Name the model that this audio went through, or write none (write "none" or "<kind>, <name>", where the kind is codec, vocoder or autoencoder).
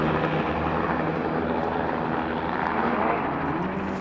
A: none